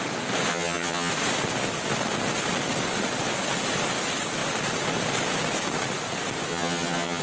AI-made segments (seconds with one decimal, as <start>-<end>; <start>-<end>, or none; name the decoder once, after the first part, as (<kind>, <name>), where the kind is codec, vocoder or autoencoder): 0.5-1.1 (vocoder, HiFi-GAN); 6.5-7.2